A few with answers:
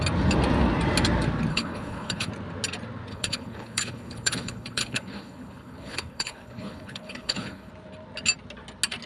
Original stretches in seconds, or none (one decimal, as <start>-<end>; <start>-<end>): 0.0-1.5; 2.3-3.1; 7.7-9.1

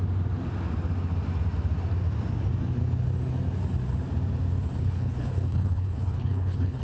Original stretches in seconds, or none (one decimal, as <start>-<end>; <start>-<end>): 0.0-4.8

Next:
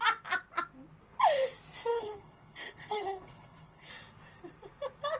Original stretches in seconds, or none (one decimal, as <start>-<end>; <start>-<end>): 0.0-1.9; 3.9-5.2

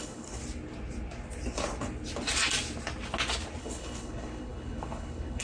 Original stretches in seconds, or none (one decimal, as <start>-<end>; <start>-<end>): 0.4-3.6

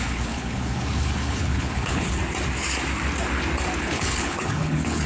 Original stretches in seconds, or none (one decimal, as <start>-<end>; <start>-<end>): 2.2-3.8